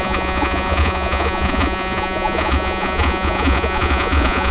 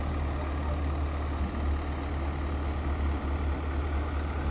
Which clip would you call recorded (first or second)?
second